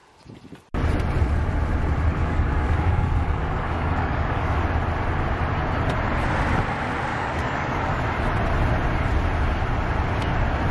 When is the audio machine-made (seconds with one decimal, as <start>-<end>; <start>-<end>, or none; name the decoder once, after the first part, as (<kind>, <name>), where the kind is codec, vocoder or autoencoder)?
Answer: 2.1-4.6 (codec, DAC); 7.1-8.0